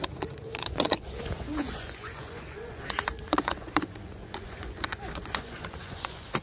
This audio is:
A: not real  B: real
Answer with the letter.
A